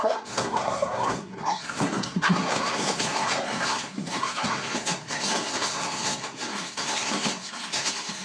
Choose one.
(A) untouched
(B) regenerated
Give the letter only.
B